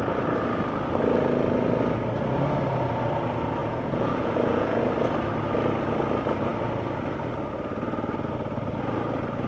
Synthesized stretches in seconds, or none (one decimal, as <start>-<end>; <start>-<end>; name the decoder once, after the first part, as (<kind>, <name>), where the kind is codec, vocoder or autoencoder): 3.6-4.8 (vocoder, Vocos)